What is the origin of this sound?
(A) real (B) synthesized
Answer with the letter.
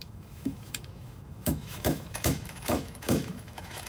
B